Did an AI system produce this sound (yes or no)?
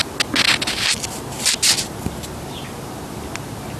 no